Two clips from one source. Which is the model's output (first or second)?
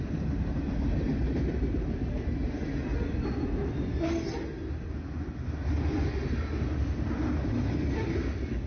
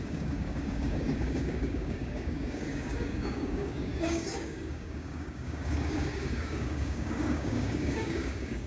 second